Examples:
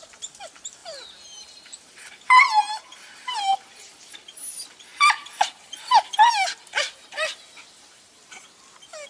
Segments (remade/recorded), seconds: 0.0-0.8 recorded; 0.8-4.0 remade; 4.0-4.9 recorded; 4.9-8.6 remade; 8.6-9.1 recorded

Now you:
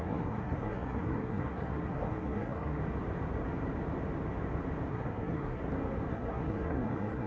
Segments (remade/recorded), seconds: 0.0-2.8 remade; 2.8-4.9 recorded; 4.9-5.6 remade; 5.6-6.1 recorded; 6.1-7.3 remade

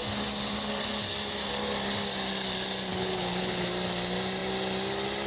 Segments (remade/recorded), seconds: 0.0-2.9 recorded; 2.9-3.7 remade; 3.7-5.3 recorded

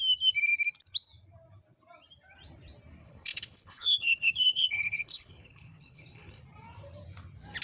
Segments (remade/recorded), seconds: 0.0-3.0 recorded; 3.0-6.4 remade; 6.4-7.6 recorded

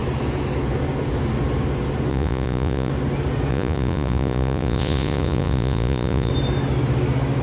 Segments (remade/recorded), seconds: 0.0-2.1 recorded; 2.1-2.9 remade; 2.9-3.5 recorded; 3.5-6.3 remade; 6.3-7.4 recorded